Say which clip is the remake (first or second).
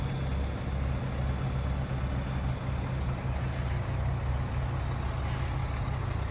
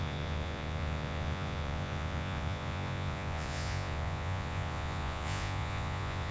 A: second